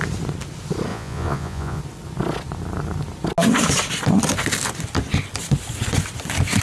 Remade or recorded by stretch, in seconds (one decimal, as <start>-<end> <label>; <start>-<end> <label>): 0.0-0.9 recorded; 0.9-1.8 remade; 1.8-6.6 recorded